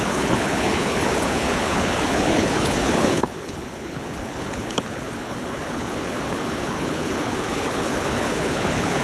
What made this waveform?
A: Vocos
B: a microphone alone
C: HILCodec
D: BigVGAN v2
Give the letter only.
C